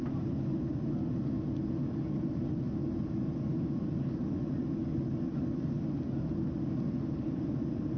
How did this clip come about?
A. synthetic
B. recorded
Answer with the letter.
B